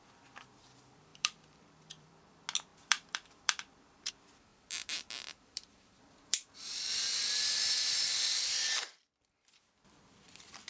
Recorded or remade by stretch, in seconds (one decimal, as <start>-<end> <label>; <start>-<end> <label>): 0.0-1.1 recorded; 1.1-2.1 remade; 2.1-2.7 recorded; 2.7-4.1 remade; 4.1-4.5 recorded; 4.5-7.1 remade; 7.1-10.7 recorded